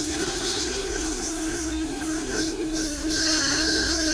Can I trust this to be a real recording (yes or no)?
no